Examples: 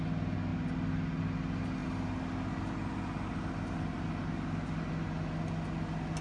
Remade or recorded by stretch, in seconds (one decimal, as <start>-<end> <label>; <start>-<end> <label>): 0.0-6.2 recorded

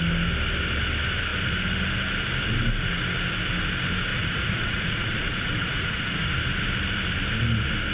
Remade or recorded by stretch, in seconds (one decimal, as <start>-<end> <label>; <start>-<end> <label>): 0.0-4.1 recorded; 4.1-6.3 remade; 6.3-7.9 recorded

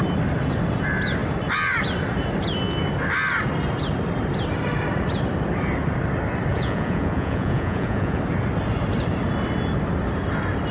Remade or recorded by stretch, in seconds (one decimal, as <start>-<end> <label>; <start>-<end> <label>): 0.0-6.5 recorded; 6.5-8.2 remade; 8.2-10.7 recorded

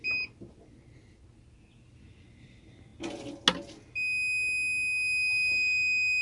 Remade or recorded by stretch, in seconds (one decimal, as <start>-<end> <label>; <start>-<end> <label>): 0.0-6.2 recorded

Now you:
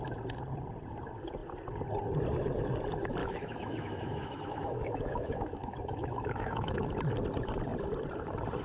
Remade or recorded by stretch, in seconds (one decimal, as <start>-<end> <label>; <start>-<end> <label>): 0.0-3.2 recorded; 3.2-6.8 remade; 6.8-8.6 recorded

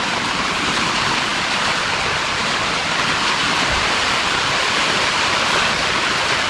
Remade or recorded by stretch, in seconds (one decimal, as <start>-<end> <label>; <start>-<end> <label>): 0.0-6.5 recorded

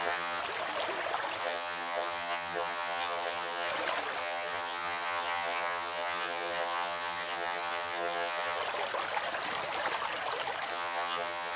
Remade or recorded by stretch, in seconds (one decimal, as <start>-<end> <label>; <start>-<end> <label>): 0.0-0.4 remade; 0.4-1.4 recorded; 1.4-3.7 remade; 3.7-4.2 recorded; 4.2-8.6 remade; 8.6-10.7 recorded; 10.7-11.6 remade

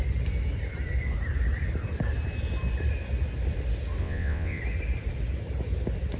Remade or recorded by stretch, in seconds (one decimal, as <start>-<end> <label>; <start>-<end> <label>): 0.0-4.0 recorded; 4.0-4.6 remade; 4.6-6.2 recorded